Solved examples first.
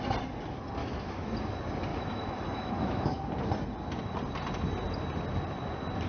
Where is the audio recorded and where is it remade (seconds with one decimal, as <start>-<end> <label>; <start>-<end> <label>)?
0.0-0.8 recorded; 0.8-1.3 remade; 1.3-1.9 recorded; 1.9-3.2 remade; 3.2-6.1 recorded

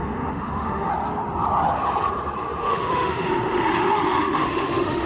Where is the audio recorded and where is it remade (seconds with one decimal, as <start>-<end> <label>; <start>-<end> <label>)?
0.0-0.9 remade; 0.9-2.6 recorded; 2.6-5.1 remade

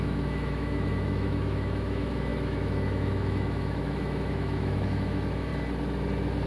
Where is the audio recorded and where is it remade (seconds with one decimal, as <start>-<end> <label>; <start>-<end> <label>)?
0.0-5.5 remade; 5.5-6.5 recorded

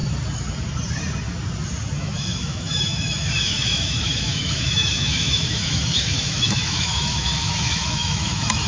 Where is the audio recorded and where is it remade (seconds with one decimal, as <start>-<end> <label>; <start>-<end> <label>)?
0.0-2.0 recorded; 2.0-8.7 remade

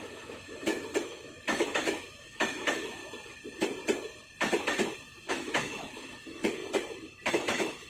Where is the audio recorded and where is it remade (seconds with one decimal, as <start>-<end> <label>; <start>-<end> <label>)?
0.0-3.0 remade; 3.0-5.3 recorded; 5.3-6.6 remade; 6.6-7.3 recorded; 7.3-7.9 remade

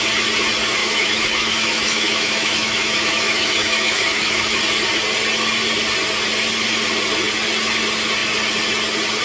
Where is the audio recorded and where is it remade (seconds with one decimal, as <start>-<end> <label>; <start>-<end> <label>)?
0.0-0.8 recorded; 0.8-4.6 remade; 4.6-9.2 recorded